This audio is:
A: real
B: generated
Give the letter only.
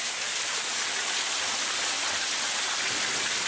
A